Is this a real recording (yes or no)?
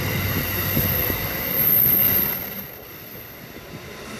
yes